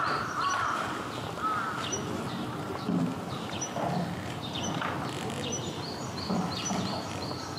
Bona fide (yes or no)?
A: yes